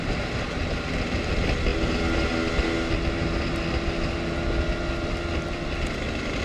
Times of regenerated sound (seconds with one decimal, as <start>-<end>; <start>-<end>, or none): none